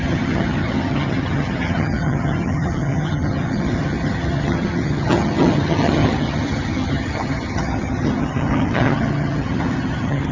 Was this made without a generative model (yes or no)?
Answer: no